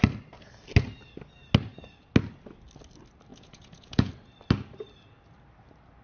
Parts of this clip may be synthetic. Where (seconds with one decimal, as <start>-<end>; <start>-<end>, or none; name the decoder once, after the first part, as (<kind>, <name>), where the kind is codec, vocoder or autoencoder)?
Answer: 3.3-4.1 (vocoder, Vocos)